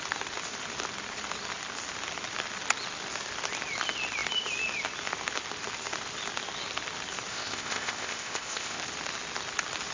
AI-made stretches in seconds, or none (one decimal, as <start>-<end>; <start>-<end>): 7.3-8.8